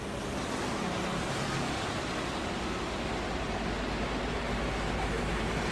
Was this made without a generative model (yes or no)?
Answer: yes